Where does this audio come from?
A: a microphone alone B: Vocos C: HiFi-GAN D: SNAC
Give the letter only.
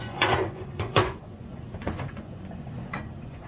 B